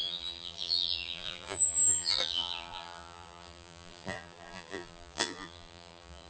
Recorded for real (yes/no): no